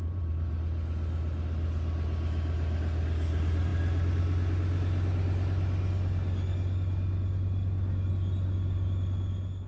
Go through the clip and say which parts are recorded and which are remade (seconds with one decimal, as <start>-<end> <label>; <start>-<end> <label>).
0.0-0.5 remade; 0.5-9.7 recorded